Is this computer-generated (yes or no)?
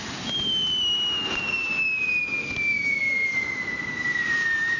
no